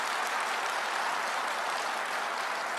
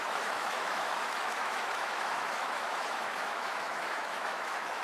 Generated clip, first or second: second